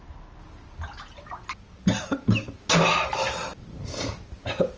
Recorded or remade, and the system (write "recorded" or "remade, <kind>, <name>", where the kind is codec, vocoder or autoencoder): recorded